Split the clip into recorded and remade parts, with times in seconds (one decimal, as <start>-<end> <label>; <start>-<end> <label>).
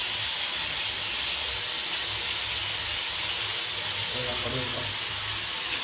0.0-5.8 recorded